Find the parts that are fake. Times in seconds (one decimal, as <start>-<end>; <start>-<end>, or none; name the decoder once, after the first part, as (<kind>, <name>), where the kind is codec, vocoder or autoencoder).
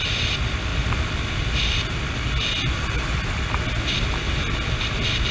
none